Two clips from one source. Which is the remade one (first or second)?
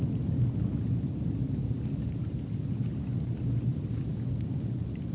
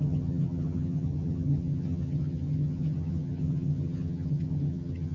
second